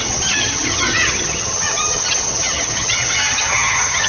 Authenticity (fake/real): fake